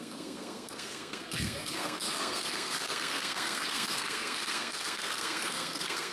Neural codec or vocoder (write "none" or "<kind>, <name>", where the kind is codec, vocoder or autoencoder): codec, SNAC